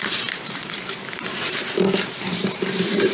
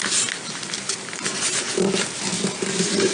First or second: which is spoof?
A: first